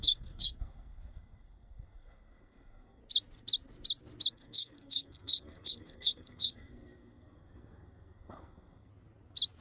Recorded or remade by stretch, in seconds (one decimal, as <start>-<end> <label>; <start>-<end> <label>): 0.0-3.0 remade; 3.0-4.3 recorded; 4.3-8.9 remade; 8.9-9.6 recorded